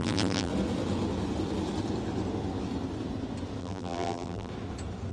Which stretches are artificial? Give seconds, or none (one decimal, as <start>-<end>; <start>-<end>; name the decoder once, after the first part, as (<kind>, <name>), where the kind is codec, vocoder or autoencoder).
0.0-0.5 (vocoder, BigVGAN v2); 3.6-4.5

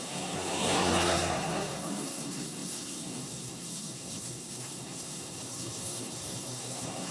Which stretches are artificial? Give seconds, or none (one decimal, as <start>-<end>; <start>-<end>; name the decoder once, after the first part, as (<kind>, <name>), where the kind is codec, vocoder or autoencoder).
0.0-7.1 (codec, SNAC)

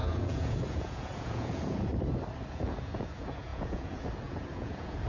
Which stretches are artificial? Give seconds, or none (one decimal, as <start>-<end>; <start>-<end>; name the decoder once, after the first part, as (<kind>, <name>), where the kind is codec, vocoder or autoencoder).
0.0-1.9 (vocoder, Vocos); 2.5-5.1

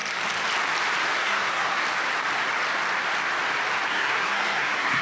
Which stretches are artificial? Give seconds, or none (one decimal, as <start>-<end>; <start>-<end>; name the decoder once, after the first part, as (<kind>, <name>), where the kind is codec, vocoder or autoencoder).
1.2-1.8 (codec, SNAC); 3.9-5.0

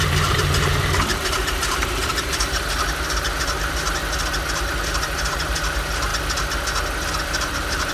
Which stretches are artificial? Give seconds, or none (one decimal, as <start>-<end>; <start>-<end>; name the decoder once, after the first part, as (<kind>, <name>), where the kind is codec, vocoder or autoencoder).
0.0-4.0 (vocoder, BigVGAN v2); 4.5-6.1; 7.2-7.9

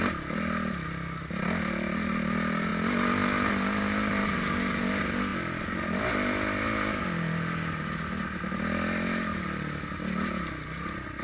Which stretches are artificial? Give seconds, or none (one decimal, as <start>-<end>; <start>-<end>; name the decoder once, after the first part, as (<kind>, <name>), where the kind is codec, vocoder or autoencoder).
none

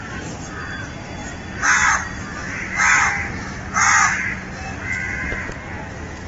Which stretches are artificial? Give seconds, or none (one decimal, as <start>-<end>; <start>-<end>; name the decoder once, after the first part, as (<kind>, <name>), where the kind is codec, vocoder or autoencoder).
none